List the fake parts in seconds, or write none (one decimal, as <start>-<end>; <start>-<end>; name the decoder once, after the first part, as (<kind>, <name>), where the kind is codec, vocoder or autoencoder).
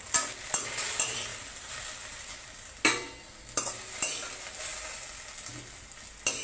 none